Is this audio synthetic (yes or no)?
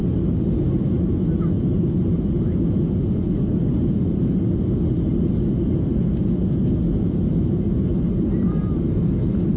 no